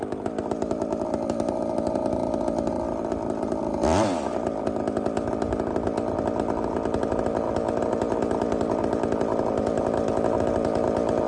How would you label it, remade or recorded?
recorded